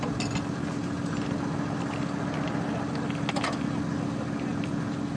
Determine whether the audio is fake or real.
real